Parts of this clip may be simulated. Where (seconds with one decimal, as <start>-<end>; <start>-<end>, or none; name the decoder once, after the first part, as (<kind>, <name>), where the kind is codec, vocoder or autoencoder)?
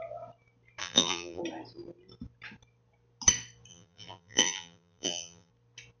0.8-1.4 (vocoder, BigVGAN v2); 3.7-5.5